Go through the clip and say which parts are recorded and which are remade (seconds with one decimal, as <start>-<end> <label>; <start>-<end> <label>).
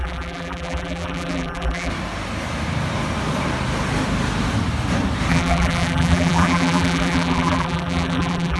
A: 0.0-1.9 remade; 1.9-5.3 recorded; 5.3-8.6 remade